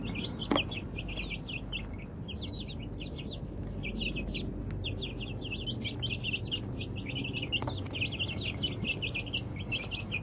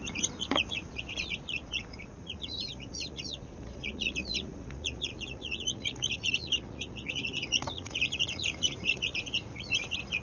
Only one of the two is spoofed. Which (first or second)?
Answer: second